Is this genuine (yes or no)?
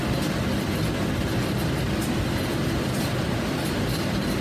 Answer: yes